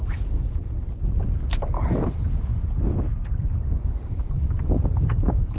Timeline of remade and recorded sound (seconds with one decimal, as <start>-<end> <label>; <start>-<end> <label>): 0.0-5.6 recorded